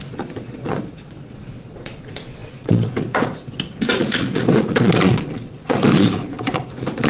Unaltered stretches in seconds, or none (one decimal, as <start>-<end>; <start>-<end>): none

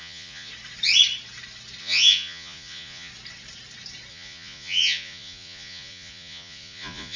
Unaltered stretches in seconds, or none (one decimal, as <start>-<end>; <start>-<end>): 0.5-1.8; 3.1-4.1

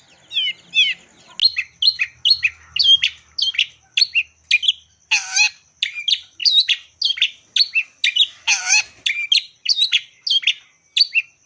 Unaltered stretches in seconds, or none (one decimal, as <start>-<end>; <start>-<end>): 0.0-11.5

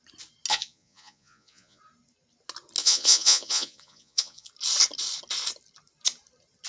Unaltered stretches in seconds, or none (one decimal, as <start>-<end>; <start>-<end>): 0.0-0.5; 1.8-2.8; 4.5-6.7